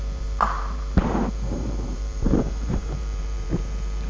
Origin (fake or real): fake